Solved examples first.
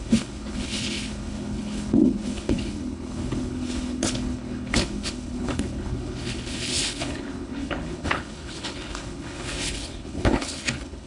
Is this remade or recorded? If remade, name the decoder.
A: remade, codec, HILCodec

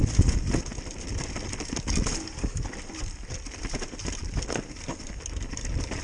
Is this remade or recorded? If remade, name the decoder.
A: recorded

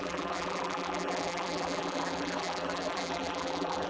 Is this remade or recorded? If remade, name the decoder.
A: remade, vocoder, BigVGAN v2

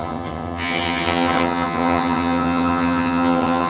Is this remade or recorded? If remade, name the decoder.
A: remade, vocoder, HiFi-GAN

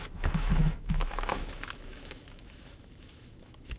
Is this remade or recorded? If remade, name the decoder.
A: remade, autoencoder, DAC-VAE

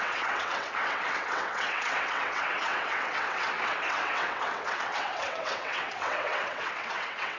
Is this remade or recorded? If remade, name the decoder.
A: remade, vocoder, WaveNeXt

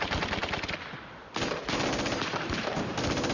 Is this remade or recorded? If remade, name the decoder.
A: recorded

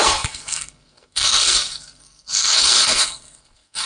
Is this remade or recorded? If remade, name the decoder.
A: remade, codec, SNAC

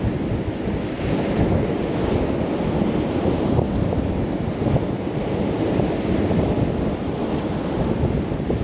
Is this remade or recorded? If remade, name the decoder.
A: recorded